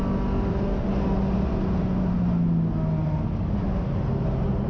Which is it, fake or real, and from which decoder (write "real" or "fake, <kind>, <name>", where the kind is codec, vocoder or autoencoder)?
real